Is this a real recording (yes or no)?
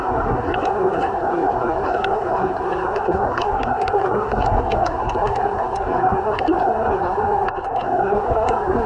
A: no